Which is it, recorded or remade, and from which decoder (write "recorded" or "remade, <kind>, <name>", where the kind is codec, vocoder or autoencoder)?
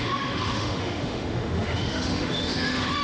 remade, autoencoder, DAC-VAE